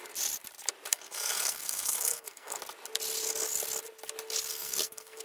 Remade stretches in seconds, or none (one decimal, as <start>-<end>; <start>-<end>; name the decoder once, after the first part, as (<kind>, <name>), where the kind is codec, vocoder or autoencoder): 0.9-2.6 (codec, SNAC); 4.5-5.2